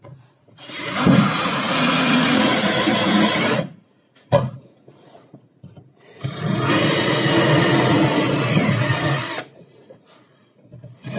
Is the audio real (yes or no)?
no